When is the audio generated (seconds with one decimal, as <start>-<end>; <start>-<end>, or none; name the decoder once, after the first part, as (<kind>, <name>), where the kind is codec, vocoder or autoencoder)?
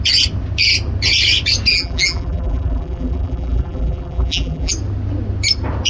1.7-4.7 (vocoder, BigVGAN v2)